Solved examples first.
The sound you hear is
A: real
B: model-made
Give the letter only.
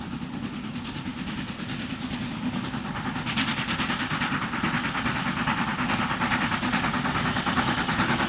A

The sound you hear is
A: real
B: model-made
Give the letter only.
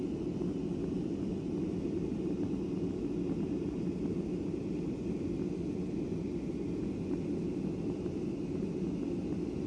A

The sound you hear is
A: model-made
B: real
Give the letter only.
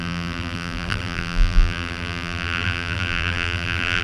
A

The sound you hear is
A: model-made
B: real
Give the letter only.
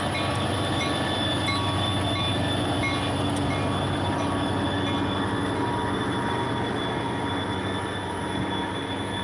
B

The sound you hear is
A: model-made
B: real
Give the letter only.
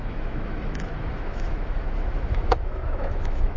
A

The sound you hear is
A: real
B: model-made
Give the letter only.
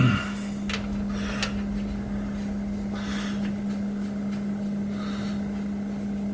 A